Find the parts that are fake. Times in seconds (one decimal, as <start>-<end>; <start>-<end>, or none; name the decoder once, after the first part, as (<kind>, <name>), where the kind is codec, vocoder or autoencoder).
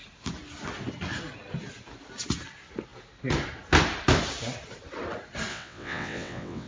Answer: 5.5-6.7 (vocoder, WaveNeXt)